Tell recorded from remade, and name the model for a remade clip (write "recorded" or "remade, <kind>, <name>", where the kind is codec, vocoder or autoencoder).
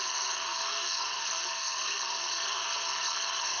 remade, codec, SNAC